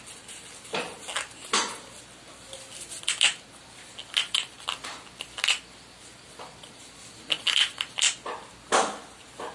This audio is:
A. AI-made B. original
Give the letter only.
B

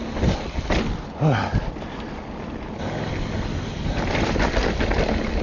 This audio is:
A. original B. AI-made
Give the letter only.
A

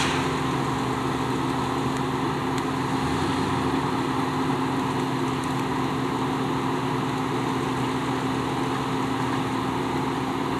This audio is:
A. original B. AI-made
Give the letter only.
A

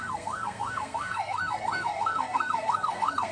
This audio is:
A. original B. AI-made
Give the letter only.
B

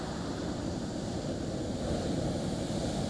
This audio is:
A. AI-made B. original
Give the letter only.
B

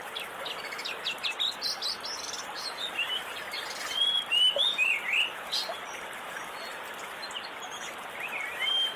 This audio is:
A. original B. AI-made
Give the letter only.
A